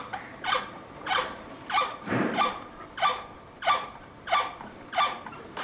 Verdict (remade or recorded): remade